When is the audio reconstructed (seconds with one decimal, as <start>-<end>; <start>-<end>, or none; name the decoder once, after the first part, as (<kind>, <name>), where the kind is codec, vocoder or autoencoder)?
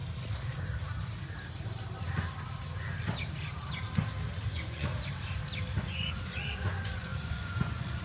4.5-4.9 (vocoder, Vocos); 5.8-8.0